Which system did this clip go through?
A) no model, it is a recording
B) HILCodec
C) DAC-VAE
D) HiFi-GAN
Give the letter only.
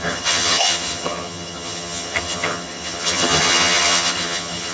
D